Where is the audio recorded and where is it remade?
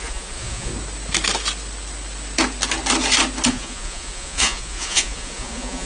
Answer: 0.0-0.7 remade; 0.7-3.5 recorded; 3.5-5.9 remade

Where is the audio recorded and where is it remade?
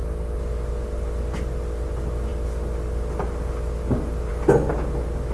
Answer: 0.0-5.3 recorded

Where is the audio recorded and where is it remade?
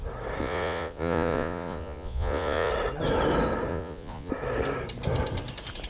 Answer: 0.0-0.4 recorded; 0.4-2.7 remade; 2.7-3.7 recorded; 3.7-4.3 remade; 4.3-5.9 recorded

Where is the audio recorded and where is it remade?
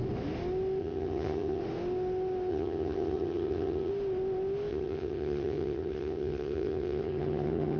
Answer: 0.0-0.8 recorded; 0.8-1.6 remade; 1.6-2.5 recorded; 2.5-3.9 remade; 3.9-4.7 recorded; 4.7-7.8 remade